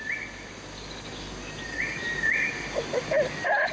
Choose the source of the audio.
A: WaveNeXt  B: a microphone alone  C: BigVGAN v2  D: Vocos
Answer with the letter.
B